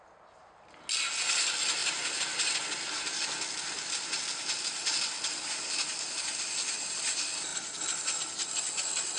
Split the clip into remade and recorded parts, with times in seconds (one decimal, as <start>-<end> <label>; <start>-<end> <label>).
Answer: 0.0-9.2 recorded